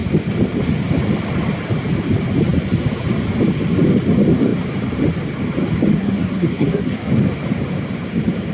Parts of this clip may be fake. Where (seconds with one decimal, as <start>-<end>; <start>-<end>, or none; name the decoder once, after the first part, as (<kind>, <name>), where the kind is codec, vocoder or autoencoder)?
5.9-7.1 (codec, SNAC)